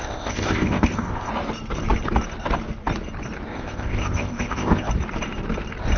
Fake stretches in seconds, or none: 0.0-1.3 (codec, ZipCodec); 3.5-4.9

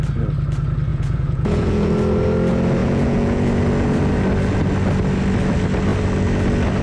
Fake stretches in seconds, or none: 0.9-1.9 (vocoder, Vocos); 2.8-3.5

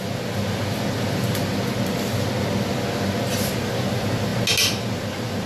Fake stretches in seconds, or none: none

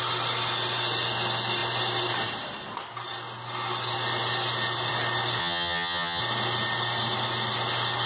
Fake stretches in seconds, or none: 5.4-6.2 (vocoder, HiFi-GAN)

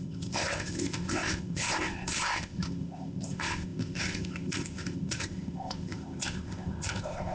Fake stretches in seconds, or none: 0.0-7.3 (codec, ZipCodec)

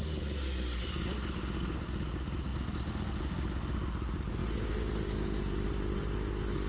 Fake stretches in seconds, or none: none

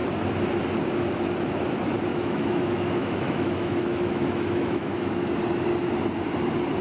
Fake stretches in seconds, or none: 2.1-5.3 (autoencoder, DAC-VAE)